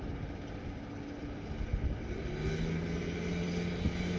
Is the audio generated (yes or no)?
no